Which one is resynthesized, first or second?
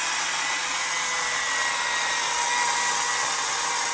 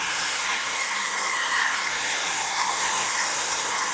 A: second